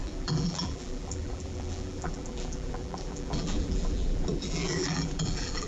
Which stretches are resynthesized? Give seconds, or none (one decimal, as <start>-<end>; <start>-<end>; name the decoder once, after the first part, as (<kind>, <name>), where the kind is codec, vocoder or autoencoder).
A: 0.0-5.7 (vocoder, BigVGAN v2)